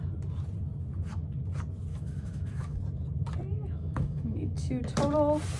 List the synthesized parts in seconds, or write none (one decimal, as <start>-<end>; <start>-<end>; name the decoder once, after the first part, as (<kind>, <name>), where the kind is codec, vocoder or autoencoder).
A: 1.9-2.8 (autoencoder, DAC-VAE); 3.5-4.8